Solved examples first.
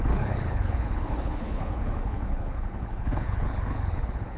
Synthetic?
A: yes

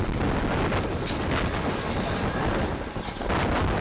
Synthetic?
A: no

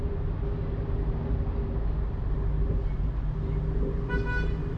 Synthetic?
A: no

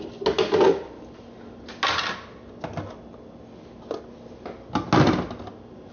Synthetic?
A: no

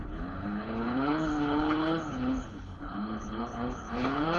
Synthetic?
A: yes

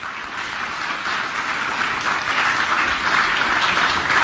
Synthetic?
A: no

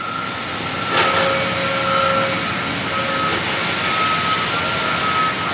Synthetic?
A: no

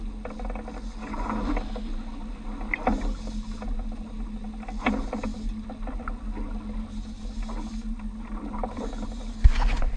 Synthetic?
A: no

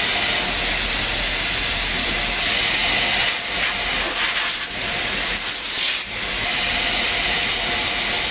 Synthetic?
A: no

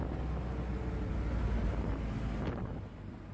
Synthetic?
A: no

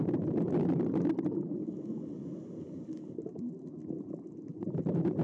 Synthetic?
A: no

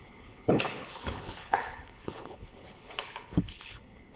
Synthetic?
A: yes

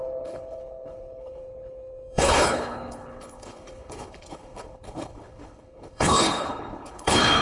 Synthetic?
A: yes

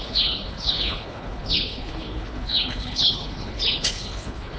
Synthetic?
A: yes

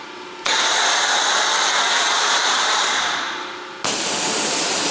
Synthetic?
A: no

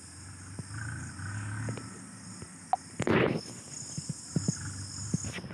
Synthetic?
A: no